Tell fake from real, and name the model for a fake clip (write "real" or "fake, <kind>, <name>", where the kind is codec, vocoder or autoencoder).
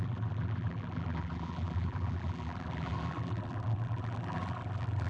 fake, vocoder, BigVGAN v2